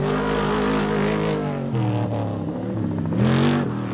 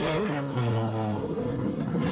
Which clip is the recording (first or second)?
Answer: first